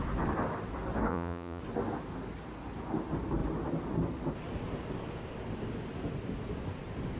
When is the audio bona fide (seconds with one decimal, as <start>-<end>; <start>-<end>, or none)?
0.0-1.1; 1.6-7.2